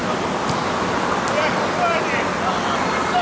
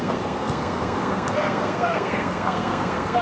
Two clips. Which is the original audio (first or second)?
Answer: first